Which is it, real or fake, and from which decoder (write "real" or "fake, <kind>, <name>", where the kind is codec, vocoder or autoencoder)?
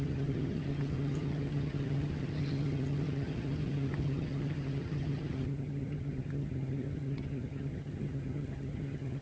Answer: fake, vocoder, HiFi-GAN